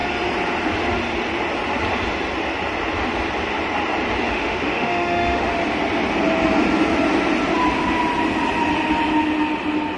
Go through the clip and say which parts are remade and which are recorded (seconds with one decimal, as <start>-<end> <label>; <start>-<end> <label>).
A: 0.0-4.3 recorded; 4.3-5.5 remade; 5.5-10.0 recorded

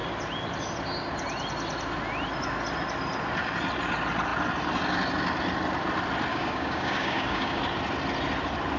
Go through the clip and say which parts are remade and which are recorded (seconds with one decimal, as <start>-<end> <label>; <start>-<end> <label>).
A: 0.0-6.3 recorded; 6.3-7.6 remade; 7.6-8.8 recorded

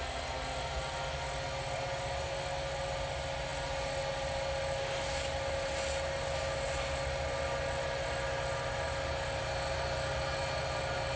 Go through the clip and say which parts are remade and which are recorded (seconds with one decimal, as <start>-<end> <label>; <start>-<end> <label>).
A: 0.0-11.2 recorded